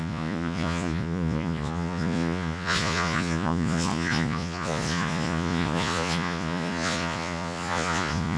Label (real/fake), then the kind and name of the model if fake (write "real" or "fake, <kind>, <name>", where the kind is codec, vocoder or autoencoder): fake, vocoder, Vocos